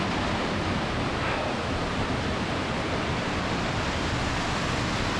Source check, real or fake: real